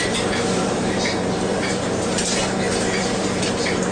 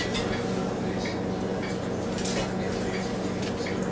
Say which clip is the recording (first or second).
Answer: second